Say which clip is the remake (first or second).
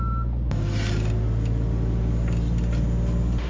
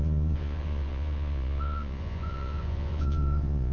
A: second